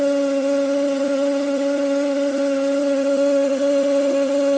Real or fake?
fake